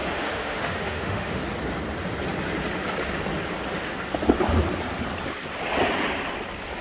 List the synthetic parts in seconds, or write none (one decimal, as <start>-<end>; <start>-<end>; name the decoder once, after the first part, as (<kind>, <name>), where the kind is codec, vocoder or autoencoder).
0.0-1.4 (autoencoder, DAC-VAE)